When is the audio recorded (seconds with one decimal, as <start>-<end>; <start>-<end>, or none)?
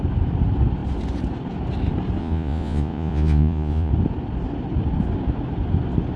0.0-2.2; 3.9-6.2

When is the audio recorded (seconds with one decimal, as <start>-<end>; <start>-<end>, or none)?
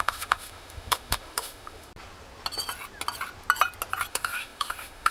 1.9-4.1